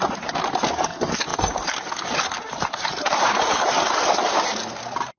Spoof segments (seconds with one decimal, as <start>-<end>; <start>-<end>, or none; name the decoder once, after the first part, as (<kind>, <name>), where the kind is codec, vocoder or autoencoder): 1.3-1.9 (vocoder, BigVGAN v2); 2.4-4.5